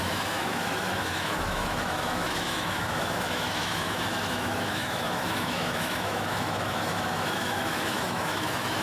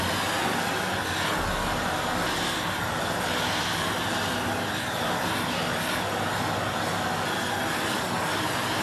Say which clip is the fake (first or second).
first